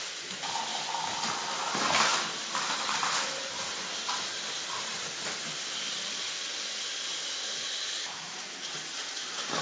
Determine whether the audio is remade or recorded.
recorded